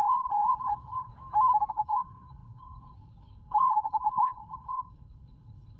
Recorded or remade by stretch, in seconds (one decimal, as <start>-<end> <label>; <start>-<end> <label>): 0.0-1.1 remade; 1.1-1.7 recorded; 1.7-5.8 remade